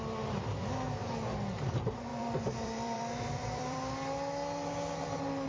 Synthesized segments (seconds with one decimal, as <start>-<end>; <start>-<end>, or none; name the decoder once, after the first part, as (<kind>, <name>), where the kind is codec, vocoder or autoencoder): 2.1-3.8 (vocoder, BigVGAN v2)